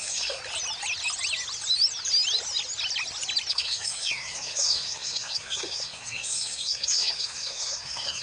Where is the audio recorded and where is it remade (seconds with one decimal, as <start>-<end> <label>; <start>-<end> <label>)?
0.0-0.4 remade; 0.4-3.5 recorded; 3.5-8.2 remade